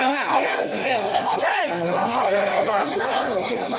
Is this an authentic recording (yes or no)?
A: no